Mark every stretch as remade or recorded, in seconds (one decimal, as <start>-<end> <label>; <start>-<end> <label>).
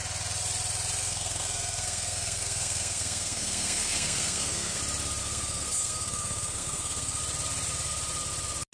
0.0-1.0 recorded; 1.0-4.8 remade; 4.8-5.2 recorded; 5.2-7.2 remade; 7.2-8.7 recorded